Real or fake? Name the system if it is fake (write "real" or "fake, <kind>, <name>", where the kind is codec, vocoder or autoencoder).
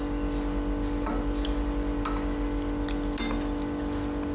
real